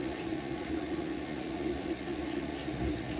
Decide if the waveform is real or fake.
fake